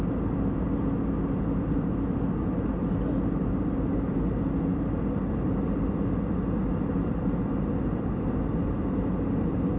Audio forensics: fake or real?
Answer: real